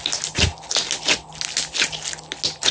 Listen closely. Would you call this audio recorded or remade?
recorded